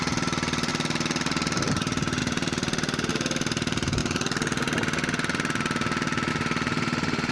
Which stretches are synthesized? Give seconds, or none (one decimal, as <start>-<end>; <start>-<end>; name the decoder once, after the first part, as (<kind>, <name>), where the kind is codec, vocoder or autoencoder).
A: 0.0-0.7 (vocoder, BigVGAN v2); 1.7-4.0; 6.3-7.3